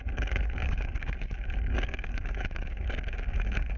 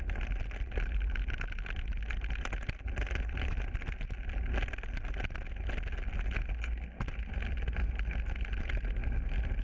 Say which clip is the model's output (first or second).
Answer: first